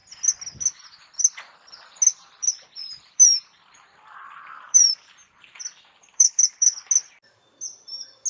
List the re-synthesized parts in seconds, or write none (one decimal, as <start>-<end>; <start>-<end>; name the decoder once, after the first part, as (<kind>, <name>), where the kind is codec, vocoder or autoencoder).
2.4-6.8 (vocoder, BigVGAN v2)